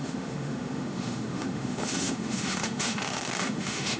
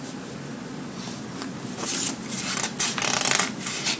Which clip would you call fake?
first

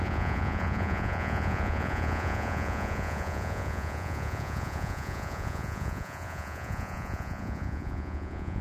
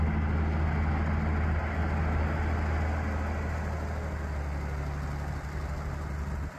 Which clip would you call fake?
first